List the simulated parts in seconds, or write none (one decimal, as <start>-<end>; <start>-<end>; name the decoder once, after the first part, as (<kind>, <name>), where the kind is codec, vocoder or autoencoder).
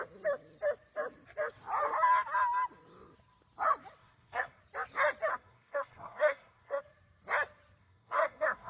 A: 4.0-4.6 (codec, SNAC); 5.3-6.8; 7.8-8.7